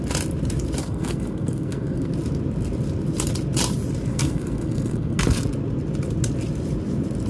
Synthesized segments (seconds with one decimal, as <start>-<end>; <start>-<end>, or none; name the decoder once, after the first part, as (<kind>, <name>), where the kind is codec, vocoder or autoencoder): 0.8-2.1 (codec, SNAC); 4.1-5.2